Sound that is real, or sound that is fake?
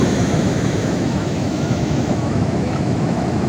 fake